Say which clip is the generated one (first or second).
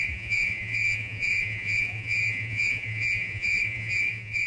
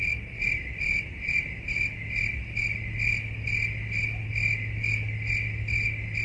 first